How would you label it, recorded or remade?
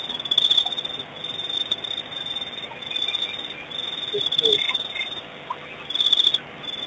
recorded